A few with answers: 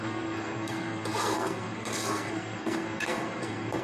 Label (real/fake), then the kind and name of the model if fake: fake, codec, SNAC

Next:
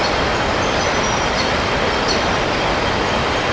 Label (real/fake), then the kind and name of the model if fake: real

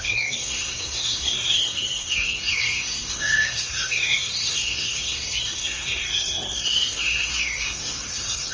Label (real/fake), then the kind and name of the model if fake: fake, codec, SNAC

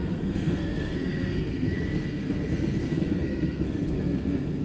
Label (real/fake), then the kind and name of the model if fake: fake, codec, SNAC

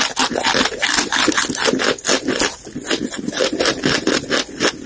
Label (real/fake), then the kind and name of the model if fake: real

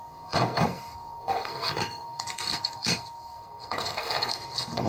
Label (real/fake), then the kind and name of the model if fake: fake, codec, SNAC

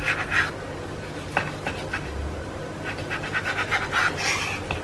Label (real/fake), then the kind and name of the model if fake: real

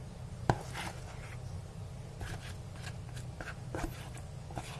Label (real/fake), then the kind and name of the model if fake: real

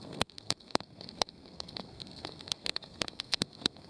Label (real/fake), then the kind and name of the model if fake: fake, codec, SNAC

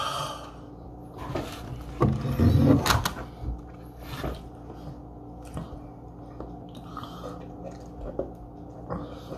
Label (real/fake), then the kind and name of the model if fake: real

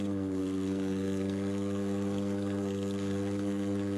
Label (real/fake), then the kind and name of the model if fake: fake, codec, SNAC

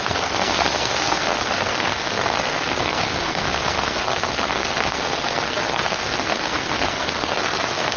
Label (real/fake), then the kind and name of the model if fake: fake, codec, SNAC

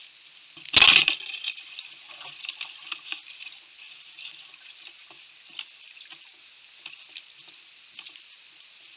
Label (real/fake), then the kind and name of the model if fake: real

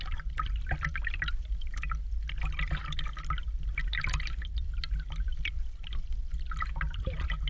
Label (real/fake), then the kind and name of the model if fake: real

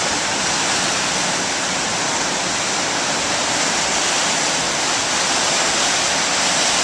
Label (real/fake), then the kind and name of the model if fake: real